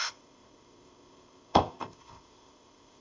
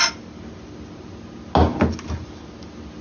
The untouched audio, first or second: second